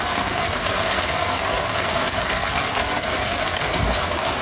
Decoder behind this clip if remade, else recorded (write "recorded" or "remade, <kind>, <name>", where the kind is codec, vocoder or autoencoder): remade, codec, SNAC